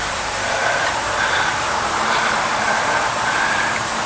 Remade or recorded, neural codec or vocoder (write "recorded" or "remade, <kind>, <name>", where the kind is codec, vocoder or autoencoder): remade, vocoder, BigVGAN v2